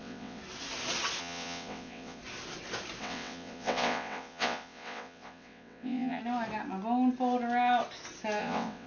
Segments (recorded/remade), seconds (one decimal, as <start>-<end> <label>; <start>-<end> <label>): 0.0-0.4 remade; 0.4-1.2 recorded; 1.2-2.2 remade; 2.2-3.0 recorded; 3.0-6.2 remade; 6.2-8.4 recorded; 8.4-8.9 remade